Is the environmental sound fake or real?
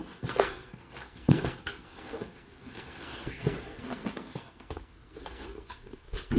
fake